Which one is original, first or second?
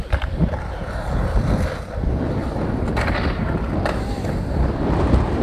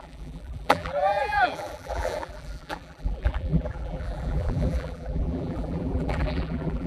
first